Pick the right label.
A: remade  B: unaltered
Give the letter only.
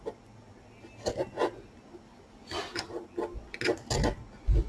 B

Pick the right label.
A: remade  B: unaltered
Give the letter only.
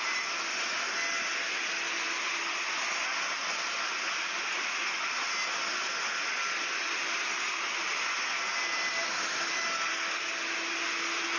B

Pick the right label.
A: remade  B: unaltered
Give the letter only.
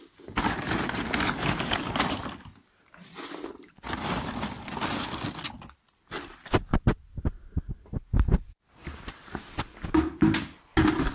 B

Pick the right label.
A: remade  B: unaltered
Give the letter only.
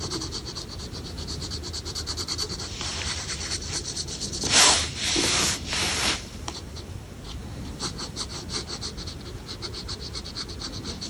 A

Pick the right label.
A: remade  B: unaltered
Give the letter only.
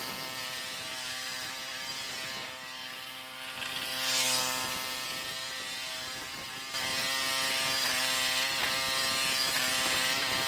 B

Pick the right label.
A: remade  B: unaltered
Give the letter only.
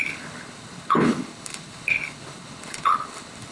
A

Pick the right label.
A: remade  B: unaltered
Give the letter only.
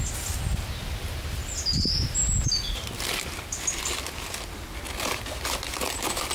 B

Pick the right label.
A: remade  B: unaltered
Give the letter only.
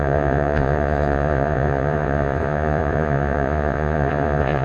A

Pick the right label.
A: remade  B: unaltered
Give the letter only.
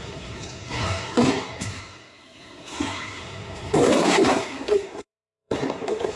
A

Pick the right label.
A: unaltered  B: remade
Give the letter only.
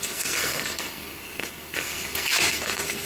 B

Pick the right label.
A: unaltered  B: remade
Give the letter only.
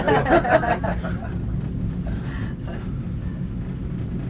A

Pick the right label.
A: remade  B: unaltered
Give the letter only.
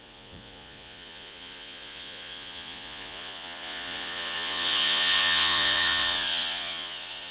A